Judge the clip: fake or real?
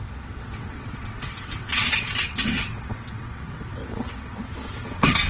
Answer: fake